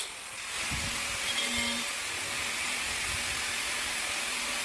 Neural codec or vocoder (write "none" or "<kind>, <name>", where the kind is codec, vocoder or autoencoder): none